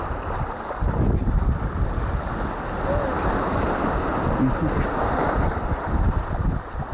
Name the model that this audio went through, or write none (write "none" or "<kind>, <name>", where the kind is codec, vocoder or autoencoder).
none